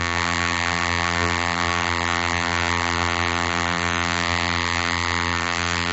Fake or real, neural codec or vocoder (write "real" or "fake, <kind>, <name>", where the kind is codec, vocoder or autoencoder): fake, vocoder, BigVGAN v2